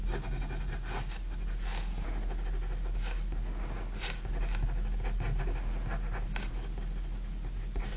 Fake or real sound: real